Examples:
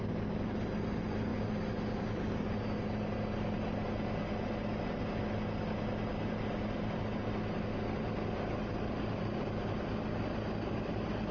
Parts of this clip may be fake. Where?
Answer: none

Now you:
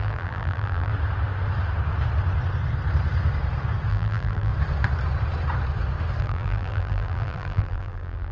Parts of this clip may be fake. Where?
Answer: 0.0-0.9 (vocoder, BigVGAN v2); 3.9-4.5; 6.2-8.3